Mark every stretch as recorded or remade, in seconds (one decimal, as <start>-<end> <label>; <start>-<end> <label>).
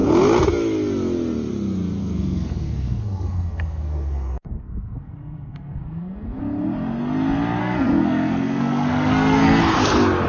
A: 0.0-2.0 recorded; 2.0-6.4 remade; 6.4-7.6 recorded; 7.6-9.6 remade; 9.6-10.3 recorded